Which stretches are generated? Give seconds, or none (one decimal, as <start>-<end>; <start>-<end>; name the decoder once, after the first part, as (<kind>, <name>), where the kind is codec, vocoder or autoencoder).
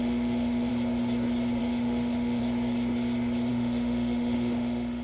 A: 0.0-0.7 (autoencoder, DAC-VAE); 1.6-2.4; 3.5-5.0